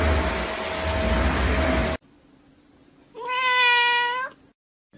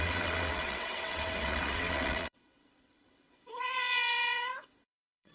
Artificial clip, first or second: second